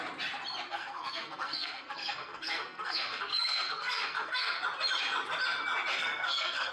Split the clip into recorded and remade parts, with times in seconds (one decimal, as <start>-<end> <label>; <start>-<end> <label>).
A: 0.0-0.7 recorded; 0.7-4.6 remade; 4.6-5.9 recorded; 5.9-6.7 remade